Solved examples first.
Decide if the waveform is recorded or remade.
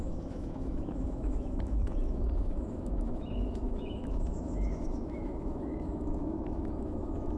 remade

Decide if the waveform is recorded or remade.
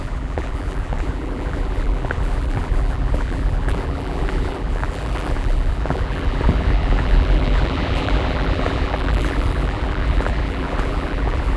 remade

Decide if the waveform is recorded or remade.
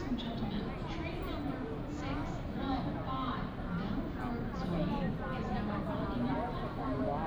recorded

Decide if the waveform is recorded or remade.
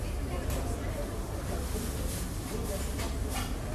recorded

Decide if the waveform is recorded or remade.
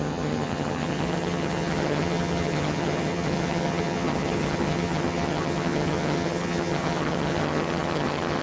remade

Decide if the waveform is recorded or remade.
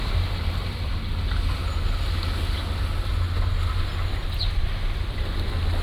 recorded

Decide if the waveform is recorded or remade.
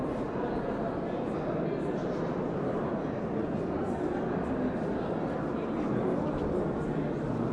recorded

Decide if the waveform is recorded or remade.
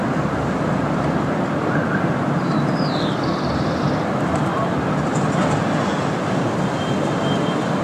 recorded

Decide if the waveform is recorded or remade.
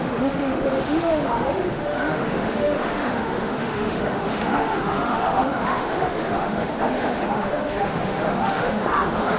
remade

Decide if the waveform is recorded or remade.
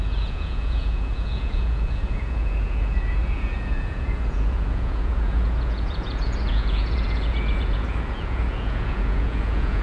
remade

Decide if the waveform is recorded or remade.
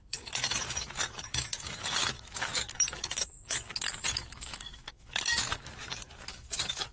remade